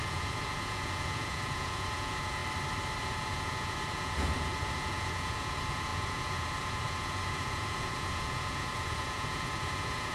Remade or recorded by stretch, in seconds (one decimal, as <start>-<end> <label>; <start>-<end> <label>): 0.0-2.4 remade; 2.4-3.0 recorded; 3.0-10.1 remade